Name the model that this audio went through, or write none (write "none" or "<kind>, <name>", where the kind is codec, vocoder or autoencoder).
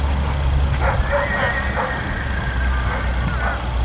none